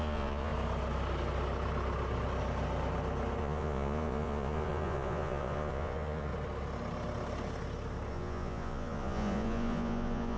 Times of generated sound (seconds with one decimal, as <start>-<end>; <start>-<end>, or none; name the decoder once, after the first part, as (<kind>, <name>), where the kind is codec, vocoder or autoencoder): 0.0-0.5 (vocoder, Vocos); 3.4-6.3; 8.1-10.4